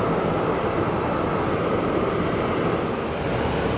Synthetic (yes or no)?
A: no